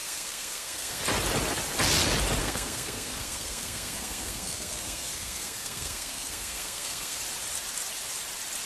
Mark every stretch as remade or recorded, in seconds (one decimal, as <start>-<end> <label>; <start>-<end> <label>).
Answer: 0.0-1.0 remade; 1.0-2.4 recorded; 2.4-7.2 remade; 7.2-8.7 recorded

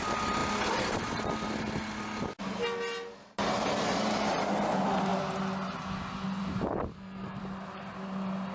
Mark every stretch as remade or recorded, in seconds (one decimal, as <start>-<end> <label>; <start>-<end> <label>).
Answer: 0.0-6.9 recorded; 6.9-7.4 remade; 7.4-8.5 recorded

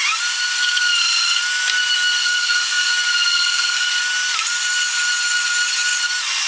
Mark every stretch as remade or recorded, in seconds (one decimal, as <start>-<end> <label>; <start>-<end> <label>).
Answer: 0.0-2.2 recorded; 2.2-2.9 remade; 2.9-3.3 recorded; 3.3-3.9 remade; 3.9-6.5 recorded

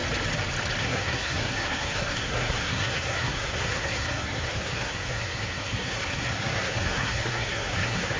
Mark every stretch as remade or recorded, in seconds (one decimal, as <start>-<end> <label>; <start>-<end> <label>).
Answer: 0.0-0.8 recorded; 0.8-8.2 remade

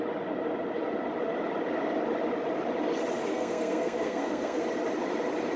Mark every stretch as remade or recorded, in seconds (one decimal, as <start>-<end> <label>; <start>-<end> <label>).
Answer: 0.0-3.3 recorded; 3.3-4.6 remade; 4.6-5.6 recorded